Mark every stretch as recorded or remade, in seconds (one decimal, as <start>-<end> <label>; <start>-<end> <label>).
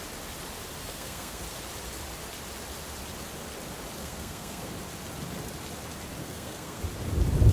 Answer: 0.0-0.8 recorded; 0.8-1.4 remade; 1.4-4.0 recorded; 4.0-4.7 remade; 4.7-6.2 recorded; 6.2-6.8 remade; 6.8-7.5 recorded